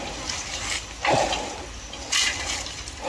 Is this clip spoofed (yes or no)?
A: no